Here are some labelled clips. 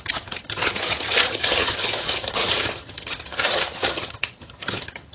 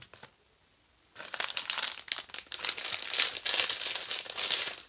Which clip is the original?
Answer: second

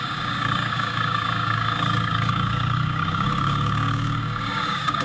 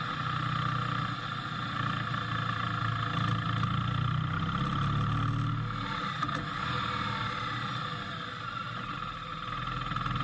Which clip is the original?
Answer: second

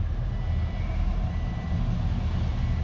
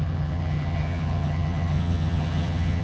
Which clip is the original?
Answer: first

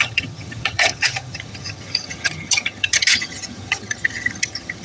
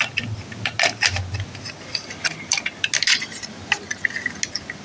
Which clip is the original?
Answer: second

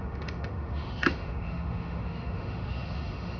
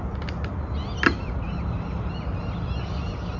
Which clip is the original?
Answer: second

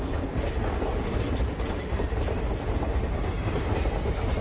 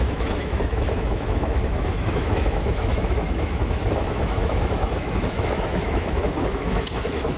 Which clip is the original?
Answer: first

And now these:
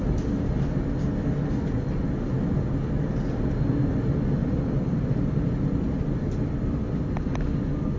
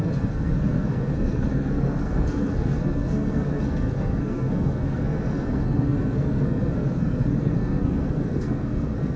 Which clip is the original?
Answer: first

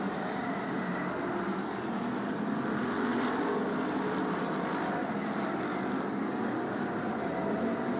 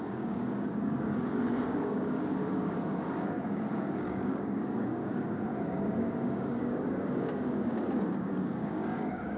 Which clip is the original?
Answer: first